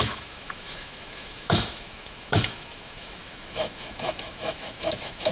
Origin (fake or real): fake